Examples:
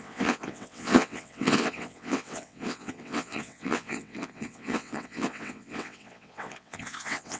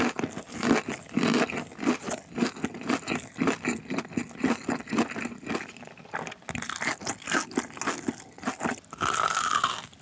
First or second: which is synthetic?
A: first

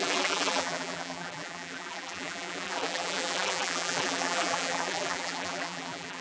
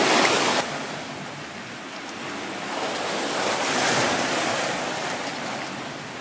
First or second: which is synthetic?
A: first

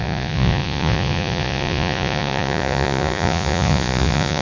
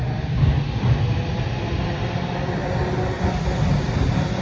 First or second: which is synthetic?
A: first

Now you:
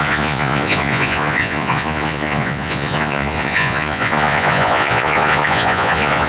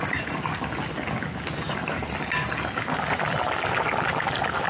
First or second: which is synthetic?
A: first